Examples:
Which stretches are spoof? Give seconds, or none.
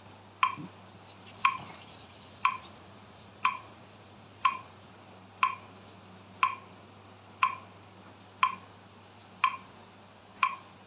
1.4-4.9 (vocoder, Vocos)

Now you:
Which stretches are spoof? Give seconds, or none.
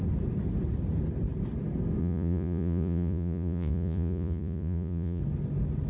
2.0-5.2 (vocoder, Vocos)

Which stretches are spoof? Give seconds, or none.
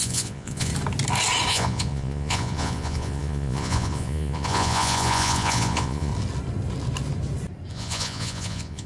0.0-0.7 (vocoder, Vocos); 1.5-6.1; 7.7-8.9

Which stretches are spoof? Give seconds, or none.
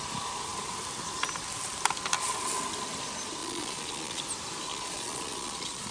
3.4-4.2 (vocoder, Vocos); 4.7-5.9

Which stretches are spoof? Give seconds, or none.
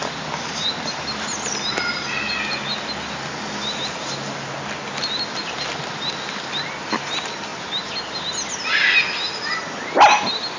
none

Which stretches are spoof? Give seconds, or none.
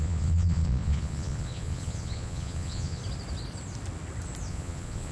0.0-3.0 (vocoder, Vocos); 4.5-5.1